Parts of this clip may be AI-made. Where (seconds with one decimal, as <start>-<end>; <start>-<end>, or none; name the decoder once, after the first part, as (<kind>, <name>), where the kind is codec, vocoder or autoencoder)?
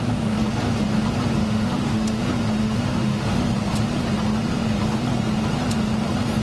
1.4-2.2 (autoencoder, DAC-VAE); 2.6-3.4